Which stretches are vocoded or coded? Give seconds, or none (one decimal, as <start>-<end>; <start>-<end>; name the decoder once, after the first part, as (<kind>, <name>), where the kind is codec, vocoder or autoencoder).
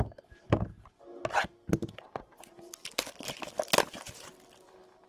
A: none